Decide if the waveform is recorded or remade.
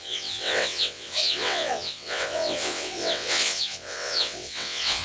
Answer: remade